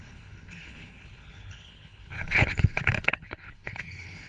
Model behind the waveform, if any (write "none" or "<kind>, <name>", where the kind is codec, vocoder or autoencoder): codec, HILCodec